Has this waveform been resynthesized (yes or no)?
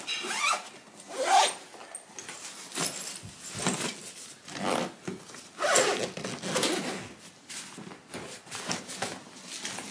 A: no